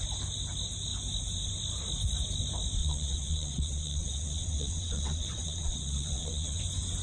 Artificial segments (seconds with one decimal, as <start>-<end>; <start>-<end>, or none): 2.8-6.6